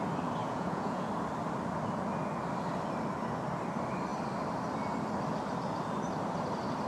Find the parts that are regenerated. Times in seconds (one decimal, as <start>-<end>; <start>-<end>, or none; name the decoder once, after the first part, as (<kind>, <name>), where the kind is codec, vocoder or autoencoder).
0.4-1.1 (vocoder, Vocos)